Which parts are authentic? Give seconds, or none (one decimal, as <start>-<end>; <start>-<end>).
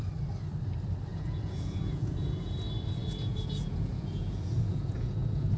0.0-1.1; 2.6-3.0